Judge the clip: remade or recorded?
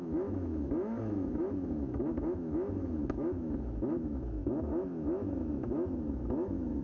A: remade